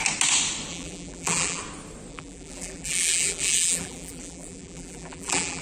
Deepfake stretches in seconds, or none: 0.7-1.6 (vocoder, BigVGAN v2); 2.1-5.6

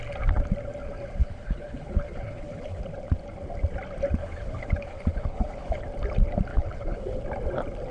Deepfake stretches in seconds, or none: 1.2-2.8 (codec, HILCodec); 4.2-5.8; 6.5-7.2

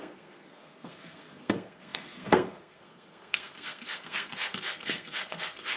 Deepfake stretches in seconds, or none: 0.0-5.8 (codec, SNAC)

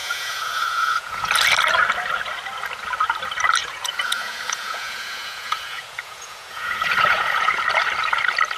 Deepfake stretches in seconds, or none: 0.0-1.3 (vocoder, Vocos); 3.6-7.6

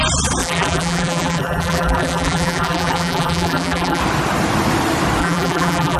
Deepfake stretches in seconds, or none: 0.4-4.0 (vocoder, BigVGAN v2); 5.2-6.0